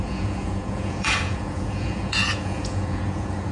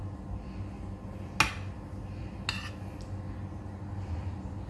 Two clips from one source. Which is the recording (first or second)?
second